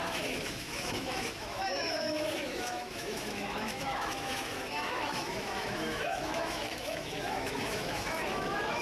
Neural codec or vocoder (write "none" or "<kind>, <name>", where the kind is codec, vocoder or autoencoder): autoencoder, DAC-VAE